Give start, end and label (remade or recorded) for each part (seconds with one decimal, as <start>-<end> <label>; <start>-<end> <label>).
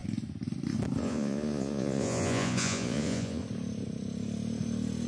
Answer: 0.0-1.0 recorded; 1.0-3.4 remade; 3.4-5.1 recorded